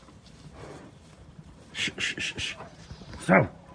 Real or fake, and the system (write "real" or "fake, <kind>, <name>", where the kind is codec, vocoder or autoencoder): fake, vocoder, BigVGAN v2